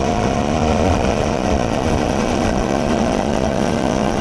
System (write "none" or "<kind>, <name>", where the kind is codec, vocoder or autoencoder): vocoder, Vocos